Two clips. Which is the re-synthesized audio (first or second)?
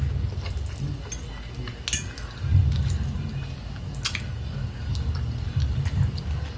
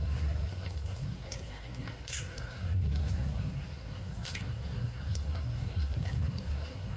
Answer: second